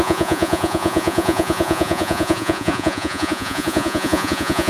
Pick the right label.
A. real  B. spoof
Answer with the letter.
B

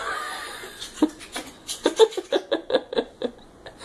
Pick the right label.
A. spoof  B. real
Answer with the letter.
A